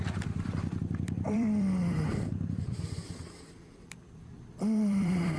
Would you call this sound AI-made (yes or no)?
yes